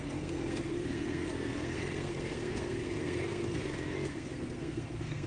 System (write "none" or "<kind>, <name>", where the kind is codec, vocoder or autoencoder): codec, SNAC